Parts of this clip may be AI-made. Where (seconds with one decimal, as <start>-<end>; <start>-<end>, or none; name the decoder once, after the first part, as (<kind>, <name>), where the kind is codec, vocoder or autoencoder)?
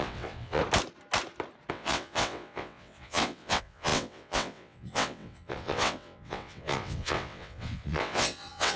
0.0-0.6 (vocoder, WaveNeXt); 1.7-8.8